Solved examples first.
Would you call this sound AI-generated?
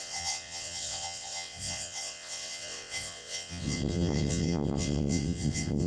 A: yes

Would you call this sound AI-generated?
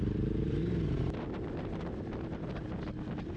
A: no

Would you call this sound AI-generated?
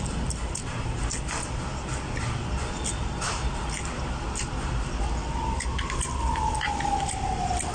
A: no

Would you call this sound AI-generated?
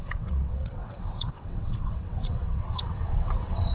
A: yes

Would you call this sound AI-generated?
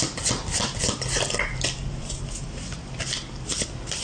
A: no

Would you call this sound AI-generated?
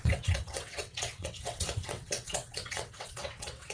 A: yes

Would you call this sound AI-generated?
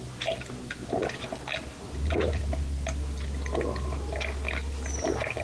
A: no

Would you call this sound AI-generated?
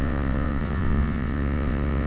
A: yes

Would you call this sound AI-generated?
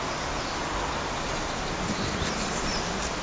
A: no